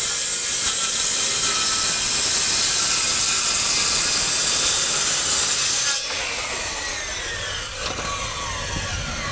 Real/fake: real